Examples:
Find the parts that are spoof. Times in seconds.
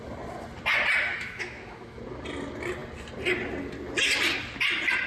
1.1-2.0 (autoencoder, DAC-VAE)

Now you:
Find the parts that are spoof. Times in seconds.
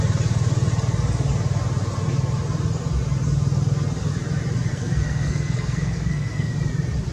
4.7-6.5 (codec, SNAC)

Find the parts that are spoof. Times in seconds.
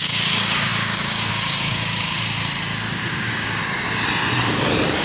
0.0-2.2 (codec, DAC); 3.1-3.6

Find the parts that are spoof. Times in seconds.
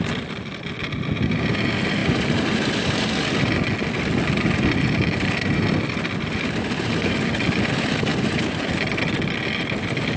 none